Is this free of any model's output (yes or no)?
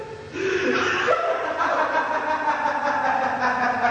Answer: yes